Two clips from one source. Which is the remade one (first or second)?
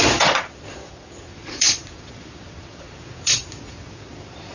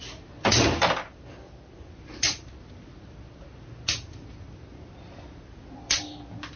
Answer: first